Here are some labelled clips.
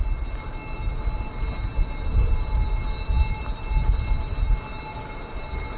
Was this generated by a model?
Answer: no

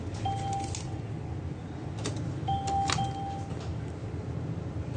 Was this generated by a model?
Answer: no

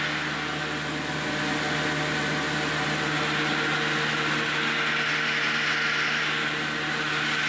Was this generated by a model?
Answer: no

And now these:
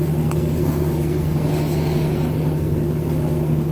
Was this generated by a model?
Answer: yes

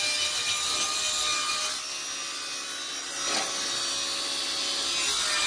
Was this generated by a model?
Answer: no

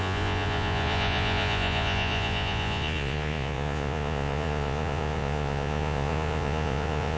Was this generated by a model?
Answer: yes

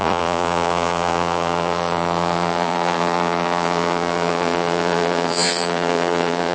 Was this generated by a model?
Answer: yes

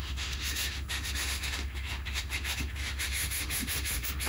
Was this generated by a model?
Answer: yes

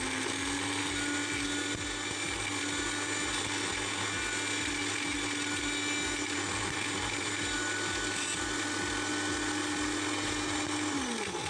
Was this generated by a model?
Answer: no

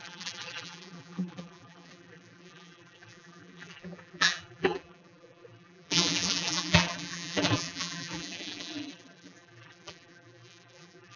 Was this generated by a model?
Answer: yes